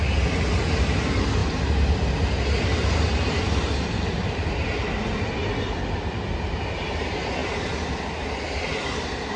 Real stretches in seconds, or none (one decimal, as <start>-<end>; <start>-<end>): 0.0-1.4; 5.5-9.4